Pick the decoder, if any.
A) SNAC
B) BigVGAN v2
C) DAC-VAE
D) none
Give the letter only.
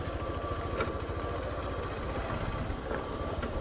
D